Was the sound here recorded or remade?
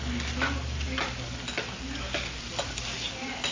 recorded